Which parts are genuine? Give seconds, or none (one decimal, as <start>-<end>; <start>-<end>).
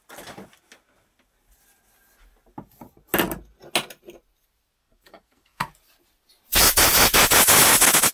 0.0-4.8; 5.7-8.1